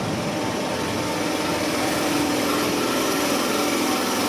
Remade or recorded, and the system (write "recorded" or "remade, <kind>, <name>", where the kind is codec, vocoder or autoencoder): remade, vocoder, BigVGAN v2